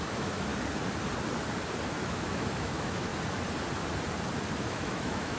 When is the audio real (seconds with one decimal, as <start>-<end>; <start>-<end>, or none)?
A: 0.5-2.0; 3.1-4.6